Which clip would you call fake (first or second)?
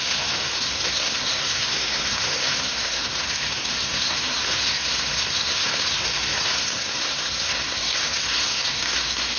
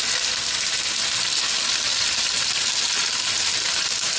first